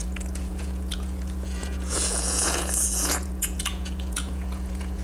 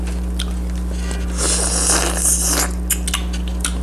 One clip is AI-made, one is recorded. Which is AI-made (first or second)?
first